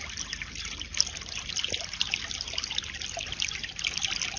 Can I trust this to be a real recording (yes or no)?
yes